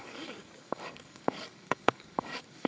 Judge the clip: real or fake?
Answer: fake